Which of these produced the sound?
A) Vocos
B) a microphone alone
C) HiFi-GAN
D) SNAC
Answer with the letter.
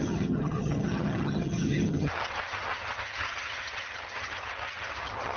C